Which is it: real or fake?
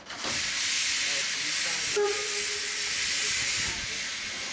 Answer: real